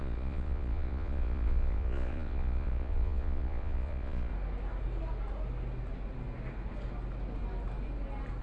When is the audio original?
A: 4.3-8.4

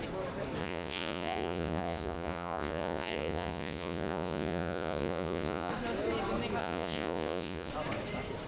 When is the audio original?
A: 0.0-0.6; 5.7-6.6; 7.7-8.5

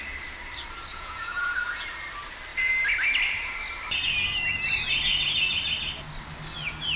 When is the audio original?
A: 0.0-0.9; 1.9-7.0

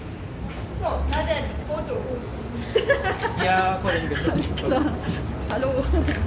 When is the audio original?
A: 0.0-6.3

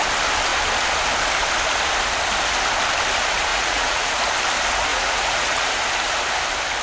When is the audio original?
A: 0.0-3.5; 4.1-4.9; 5.7-6.8